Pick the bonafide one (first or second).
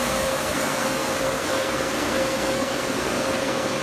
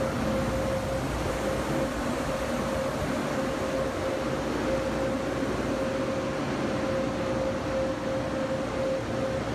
second